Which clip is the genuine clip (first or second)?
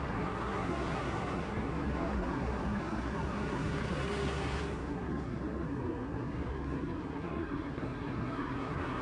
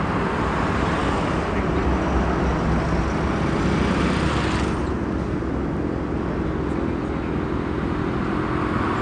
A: second